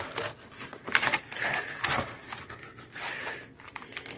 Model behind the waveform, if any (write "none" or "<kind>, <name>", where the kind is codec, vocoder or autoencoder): none